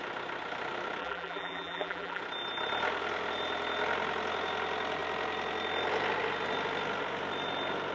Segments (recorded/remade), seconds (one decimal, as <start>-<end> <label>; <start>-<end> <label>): 0.0-1.0 recorded; 1.0-2.2 remade; 2.2-7.9 recorded